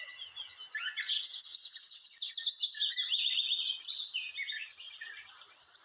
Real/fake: real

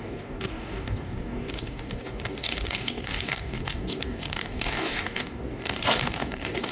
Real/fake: fake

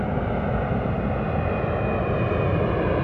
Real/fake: real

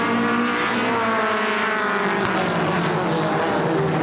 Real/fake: real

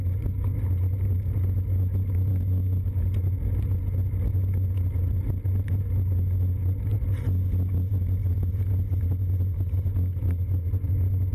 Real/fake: real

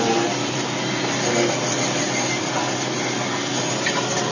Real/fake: real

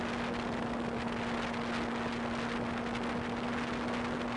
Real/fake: real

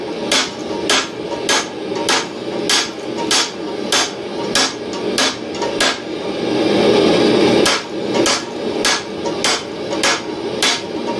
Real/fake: real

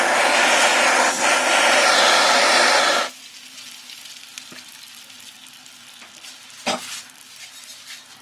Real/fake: real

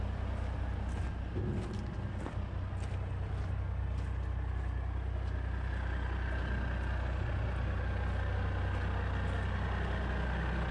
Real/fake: real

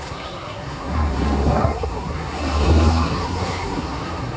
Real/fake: fake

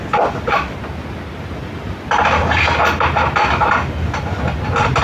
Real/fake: real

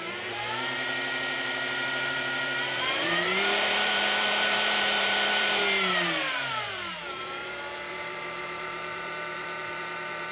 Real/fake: fake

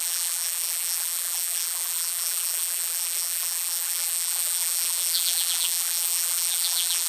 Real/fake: fake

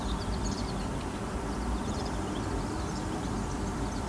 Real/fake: fake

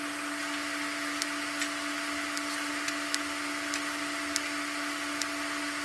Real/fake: real